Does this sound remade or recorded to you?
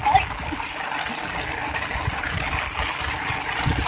recorded